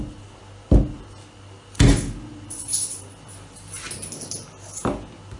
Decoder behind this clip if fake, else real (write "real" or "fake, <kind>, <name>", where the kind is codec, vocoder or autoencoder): real